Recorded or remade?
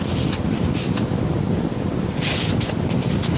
recorded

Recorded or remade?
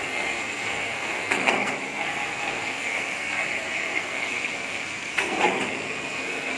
remade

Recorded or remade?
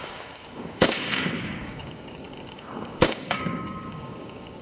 remade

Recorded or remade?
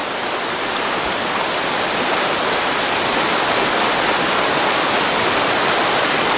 recorded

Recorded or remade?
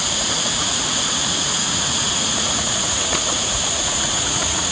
remade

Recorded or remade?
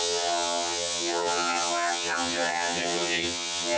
remade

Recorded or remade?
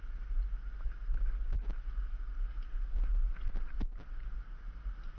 recorded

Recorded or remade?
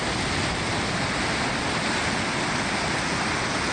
recorded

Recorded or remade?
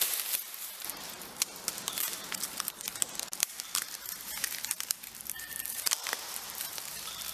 remade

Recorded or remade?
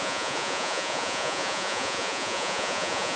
remade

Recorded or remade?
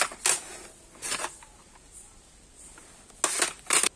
recorded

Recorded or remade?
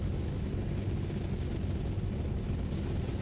recorded